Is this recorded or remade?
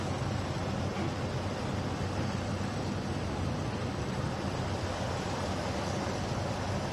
recorded